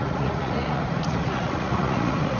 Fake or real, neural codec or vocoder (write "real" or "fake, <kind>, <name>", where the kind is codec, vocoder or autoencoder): fake, vocoder, Vocos